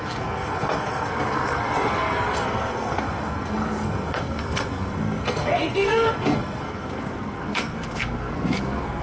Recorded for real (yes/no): no